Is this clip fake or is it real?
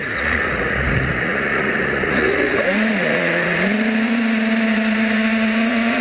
fake